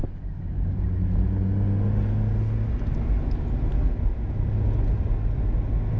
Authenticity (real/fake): real